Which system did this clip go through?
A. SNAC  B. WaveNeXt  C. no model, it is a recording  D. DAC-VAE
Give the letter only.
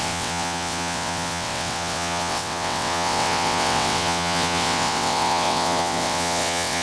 B